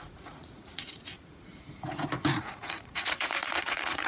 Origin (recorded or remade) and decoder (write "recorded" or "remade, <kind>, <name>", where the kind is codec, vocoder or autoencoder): remade, vocoder, Vocos